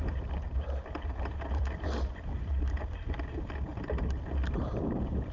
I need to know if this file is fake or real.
fake